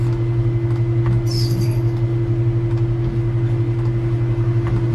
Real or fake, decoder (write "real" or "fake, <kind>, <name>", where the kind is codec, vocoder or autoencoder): real